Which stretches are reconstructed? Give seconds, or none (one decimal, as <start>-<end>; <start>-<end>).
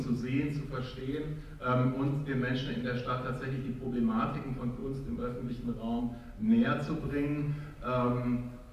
none